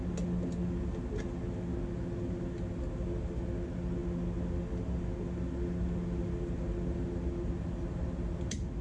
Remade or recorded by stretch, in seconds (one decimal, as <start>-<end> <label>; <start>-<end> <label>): 0.0-8.8 recorded